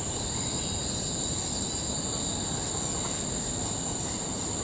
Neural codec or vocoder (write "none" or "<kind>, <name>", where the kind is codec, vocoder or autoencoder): none